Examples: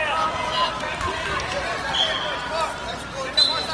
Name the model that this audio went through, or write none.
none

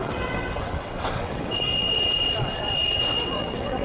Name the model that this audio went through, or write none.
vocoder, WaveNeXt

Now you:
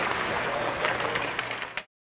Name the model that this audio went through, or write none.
none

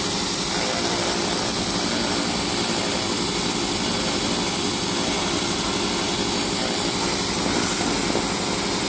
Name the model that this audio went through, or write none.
none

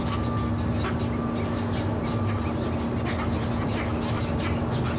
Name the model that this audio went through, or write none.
none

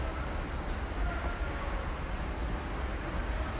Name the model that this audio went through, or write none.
none